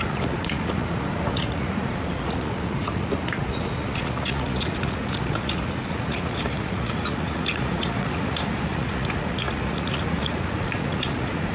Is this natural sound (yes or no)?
no